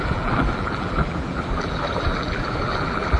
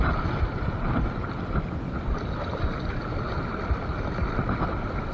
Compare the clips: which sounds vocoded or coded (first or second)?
first